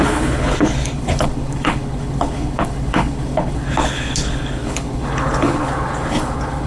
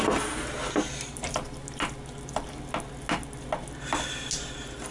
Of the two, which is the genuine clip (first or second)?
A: second